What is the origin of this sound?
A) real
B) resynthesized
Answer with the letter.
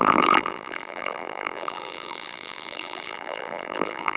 B